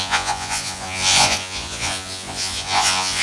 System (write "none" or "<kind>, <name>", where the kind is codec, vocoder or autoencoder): vocoder, Vocos